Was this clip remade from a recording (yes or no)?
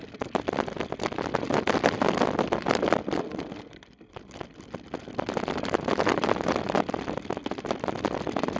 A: no